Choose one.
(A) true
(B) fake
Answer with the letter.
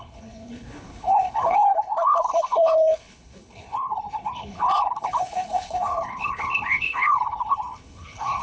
B